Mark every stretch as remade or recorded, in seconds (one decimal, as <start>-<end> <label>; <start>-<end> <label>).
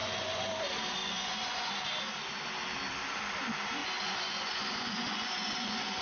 0.0-0.6 remade; 0.6-1.0 recorded; 1.0-1.7 remade; 1.7-3.8 recorded; 3.8-6.0 remade